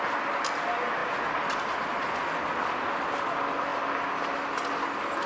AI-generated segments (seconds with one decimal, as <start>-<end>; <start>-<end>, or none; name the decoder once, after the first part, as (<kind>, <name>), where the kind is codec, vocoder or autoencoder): none